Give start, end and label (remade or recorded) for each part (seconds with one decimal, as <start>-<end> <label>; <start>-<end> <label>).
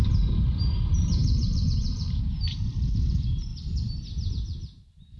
0.0-3.5 remade; 3.5-4.3 recorded; 4.3-5.2 remade